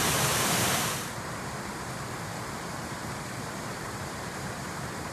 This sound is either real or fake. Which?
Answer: fake